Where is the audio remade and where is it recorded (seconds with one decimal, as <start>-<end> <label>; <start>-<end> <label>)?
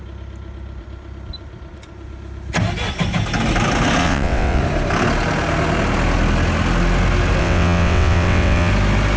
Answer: 0.0-4.0 recorded; 4.0-4.6 remade; 4.6-7.4 recorded; 7.4-8.7 remade; 8.7-9.2 recorded